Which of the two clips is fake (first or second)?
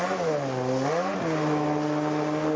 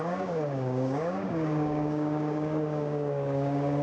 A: second